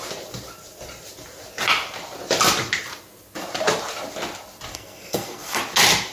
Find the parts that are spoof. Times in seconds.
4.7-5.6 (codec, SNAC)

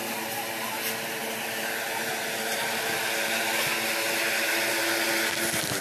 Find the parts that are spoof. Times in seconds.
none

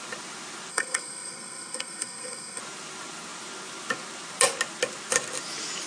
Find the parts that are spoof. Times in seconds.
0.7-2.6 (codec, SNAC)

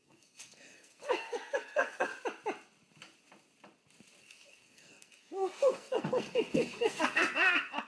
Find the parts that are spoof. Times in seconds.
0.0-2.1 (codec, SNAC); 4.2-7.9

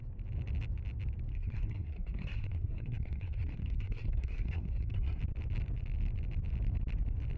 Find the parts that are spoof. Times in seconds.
1.3-5.2 (codec, SNAC)